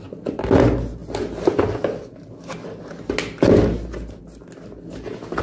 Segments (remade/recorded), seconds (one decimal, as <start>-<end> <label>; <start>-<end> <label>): 0.0-5.4 recorded